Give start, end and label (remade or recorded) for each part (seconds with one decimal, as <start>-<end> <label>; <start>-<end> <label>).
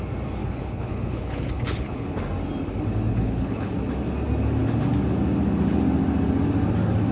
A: 0.0-0.4 recorded; 0.4-2.2 remade; 2.2-3.1 recorded; 3.1-3.7 remade; 3.7-7.1 recorded